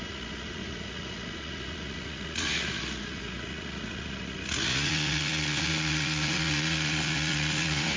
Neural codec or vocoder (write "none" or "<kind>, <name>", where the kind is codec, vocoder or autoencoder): vocoder, Vocos